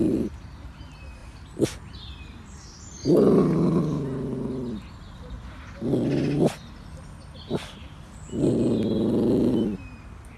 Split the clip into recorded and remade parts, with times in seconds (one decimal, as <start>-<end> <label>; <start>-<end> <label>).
0.0-10.4 recorded